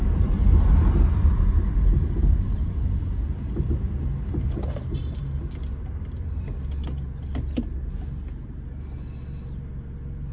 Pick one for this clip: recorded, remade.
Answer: recorded